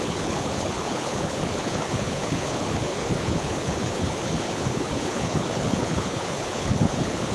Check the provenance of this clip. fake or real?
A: fake